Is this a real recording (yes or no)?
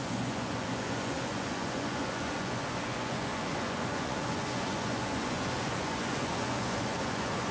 no